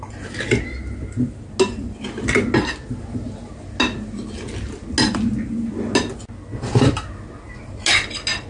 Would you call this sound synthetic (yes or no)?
no